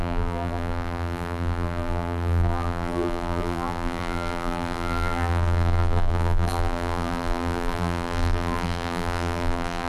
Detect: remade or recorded remade